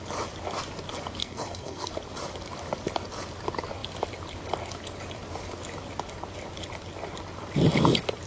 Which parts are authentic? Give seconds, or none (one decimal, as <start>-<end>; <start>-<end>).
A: 0.0-1.2; 1.9-8.3